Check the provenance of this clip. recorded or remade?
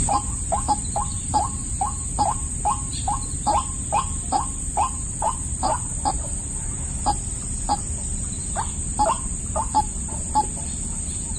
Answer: recorded